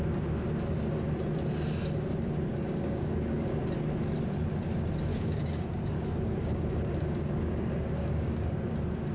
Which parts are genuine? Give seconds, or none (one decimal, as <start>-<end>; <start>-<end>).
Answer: 0.0-2.5; 3.6-5.1; 8.6-9.1